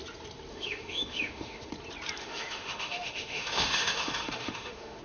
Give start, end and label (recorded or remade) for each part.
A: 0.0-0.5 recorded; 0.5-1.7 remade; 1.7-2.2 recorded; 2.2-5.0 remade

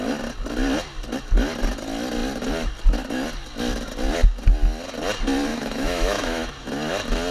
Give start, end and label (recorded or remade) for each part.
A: 0.0-5.5 recorded; 5.5-6.5 remade; 6.5-7.3 recorded

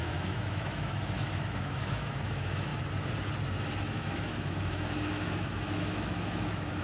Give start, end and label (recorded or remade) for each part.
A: 0.0-2.7 remade; 2.7-3.8 recorded; 3.8-6.8 remade

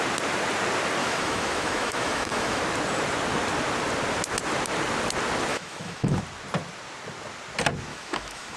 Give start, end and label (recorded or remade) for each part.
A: 0.0-1.0 recorded; 1.0-2.6 remade; 2.6-5.5 recorded; 5.5-6.2 remade; 6.2-7.9 recorded; 7.9-8.6 remade

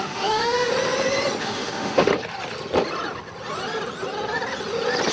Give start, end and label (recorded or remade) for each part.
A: 0.0-0.7 remade; 0.7-1.4 recorded; 1.4-2.1 remade; 2.1-5.1 recorded

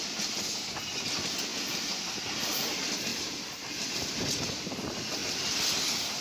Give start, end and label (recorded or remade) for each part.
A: 0.0-6.2 recorded

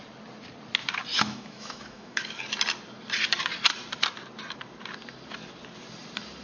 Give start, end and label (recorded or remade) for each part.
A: 0.0-1.1 recorded; 1.1-2.3 remade; 2.3-6.4 recorded